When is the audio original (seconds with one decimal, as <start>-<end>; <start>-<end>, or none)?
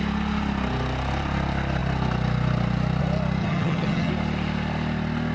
0.0-3.4; 4.1-5.3